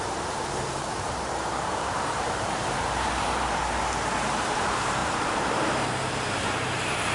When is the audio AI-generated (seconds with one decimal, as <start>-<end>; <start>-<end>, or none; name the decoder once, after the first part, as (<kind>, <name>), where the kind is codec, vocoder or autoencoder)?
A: 0.0-3.6 (vocoder, BigVGAN v2); 4.3-7.1